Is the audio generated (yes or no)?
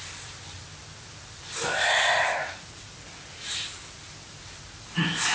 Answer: no